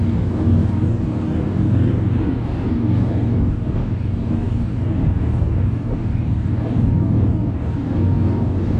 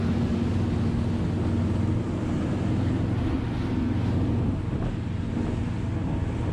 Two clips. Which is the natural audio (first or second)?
second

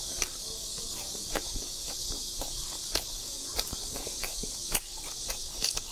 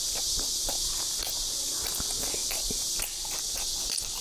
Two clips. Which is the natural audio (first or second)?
second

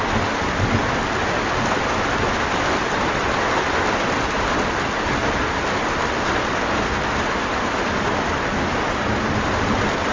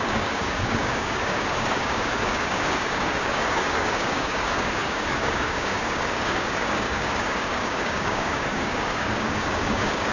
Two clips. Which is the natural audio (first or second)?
first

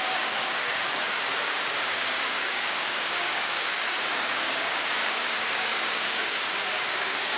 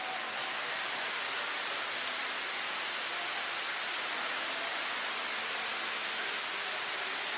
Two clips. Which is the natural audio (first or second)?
second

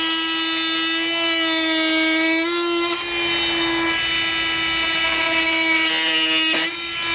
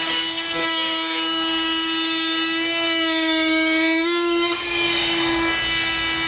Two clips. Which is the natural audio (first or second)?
first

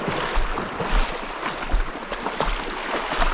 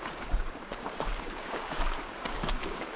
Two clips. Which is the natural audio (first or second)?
first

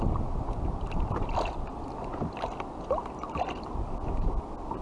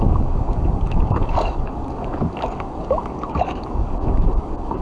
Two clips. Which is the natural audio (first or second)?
first